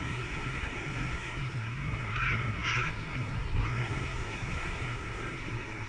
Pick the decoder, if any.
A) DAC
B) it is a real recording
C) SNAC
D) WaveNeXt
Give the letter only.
C